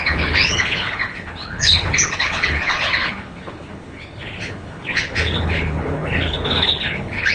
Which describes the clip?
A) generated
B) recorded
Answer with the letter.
A